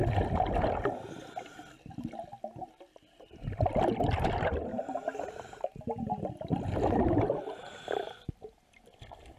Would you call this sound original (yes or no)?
yes